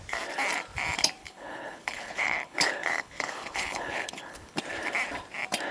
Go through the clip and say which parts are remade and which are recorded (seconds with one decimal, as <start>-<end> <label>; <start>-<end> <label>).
0.0-1.2 recorded; 1.2-4.6 remade; 4.6-5.7 recorded